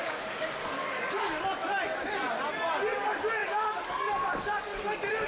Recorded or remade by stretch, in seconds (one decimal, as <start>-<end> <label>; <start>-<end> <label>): 0.0-1.4 remade; 1.4-3.4 recorded; 3.4-4.8 remade; 4.8-5.3 recorded